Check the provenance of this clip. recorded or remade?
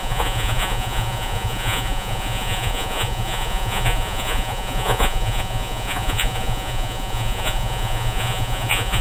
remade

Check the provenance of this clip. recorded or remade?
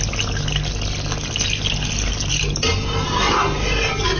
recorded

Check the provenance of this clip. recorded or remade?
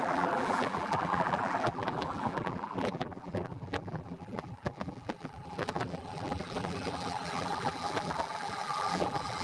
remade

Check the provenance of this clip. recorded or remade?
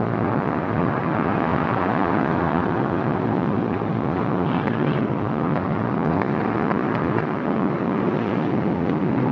remade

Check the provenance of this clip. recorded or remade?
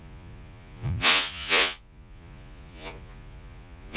remade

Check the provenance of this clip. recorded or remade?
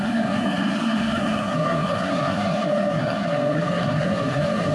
remade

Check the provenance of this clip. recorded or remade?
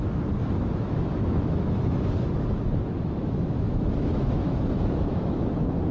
remade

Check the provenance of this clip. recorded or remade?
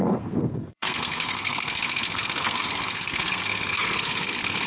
remade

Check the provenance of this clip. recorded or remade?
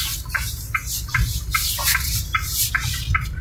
remade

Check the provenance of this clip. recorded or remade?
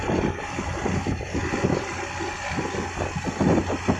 recorded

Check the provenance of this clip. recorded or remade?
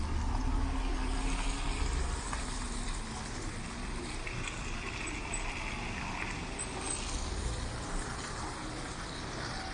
recorded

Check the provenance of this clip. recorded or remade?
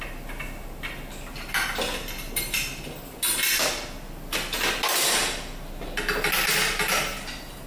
recorded